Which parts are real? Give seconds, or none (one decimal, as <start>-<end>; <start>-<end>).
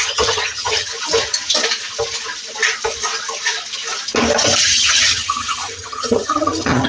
0.9-4.6